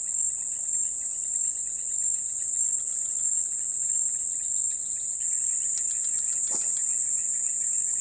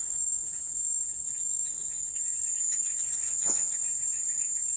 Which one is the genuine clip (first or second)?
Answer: first